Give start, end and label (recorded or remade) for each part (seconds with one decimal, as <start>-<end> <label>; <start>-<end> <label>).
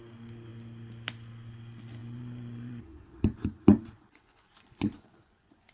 0.0-2.0 recorded; 2.0-5.7 remade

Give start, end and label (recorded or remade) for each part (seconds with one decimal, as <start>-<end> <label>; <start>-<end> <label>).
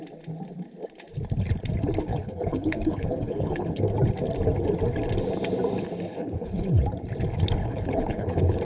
0.0-2.1 recorded; 2.1-3.8 remade; 3.8-6.1 recorded; 6.1-6.8 remade; 6.8-7.6 recorded; 7.6-8.6 remade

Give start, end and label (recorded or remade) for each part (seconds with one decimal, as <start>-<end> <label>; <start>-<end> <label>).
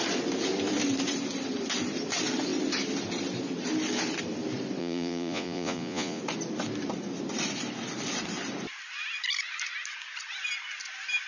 0.0-4.8 recorded; 4.8-6.2 remade; 6.2-11.3 recorded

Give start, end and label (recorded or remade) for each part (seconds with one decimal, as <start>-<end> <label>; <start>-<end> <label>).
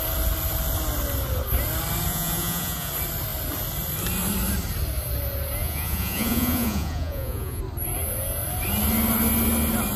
0.0-2.1 recorded; 2.1-2.9 remade; 2.9-5.6 recorded; 5.6-7.6 remade; 7.6-10.0 recorded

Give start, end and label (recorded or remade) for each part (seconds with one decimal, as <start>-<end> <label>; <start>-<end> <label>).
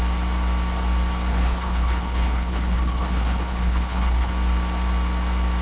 0.0-1.3 recorded; 1.3-4.3 remade; 4.3-5.6 recorded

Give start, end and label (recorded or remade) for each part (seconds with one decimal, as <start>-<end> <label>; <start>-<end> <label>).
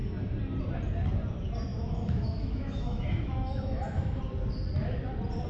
0.0-1.7 recorded; 1.7-4.2 remade; 4.2-5.5 recorded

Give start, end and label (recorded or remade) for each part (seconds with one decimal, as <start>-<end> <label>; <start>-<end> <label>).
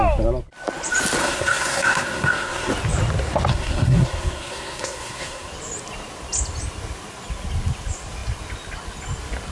0.0-1.2 recorded; 1.2-2.7 remade; 2.7-3.5 recorded; 3.5-5.5 remade; 5.5-9.5 recorded